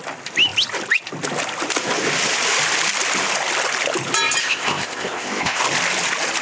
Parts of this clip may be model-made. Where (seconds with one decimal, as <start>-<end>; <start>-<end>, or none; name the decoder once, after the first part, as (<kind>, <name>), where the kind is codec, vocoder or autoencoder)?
4.4-5.6 (codec, ZipCodec)